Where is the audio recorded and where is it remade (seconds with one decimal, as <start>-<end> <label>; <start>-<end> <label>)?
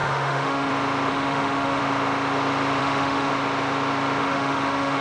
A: 0.0-0.7 remade; 0.7-1.1 recorded; 1.1-1.8 remade; 1.8-2.8 recorded; 2.8-3.3 remade; 3.3-4.2 recorded; 4.2-5.0 remade